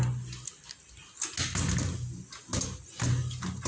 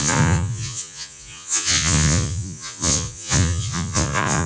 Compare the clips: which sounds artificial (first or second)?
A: second